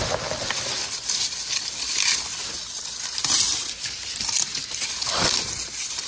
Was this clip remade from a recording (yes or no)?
no